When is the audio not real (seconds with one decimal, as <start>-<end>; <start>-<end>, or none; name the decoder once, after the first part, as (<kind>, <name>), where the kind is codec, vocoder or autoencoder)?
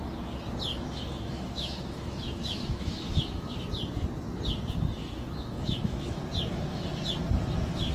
0.7-3.6 (autoencoder, DAC-VAE); 5.0-6.2